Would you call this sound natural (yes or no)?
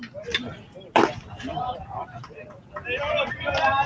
yes